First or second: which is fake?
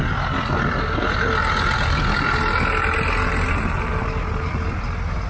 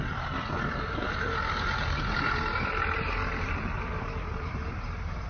second